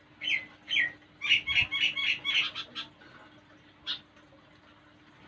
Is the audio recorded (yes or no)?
yes